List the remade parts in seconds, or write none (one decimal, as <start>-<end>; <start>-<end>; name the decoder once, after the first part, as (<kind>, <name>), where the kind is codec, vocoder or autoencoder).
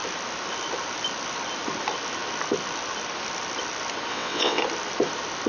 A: 4.1-4.6 (vocoder, WaveNeXt)